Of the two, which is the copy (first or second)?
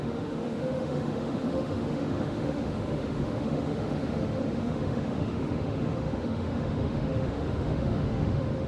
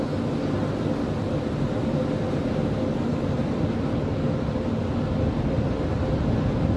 first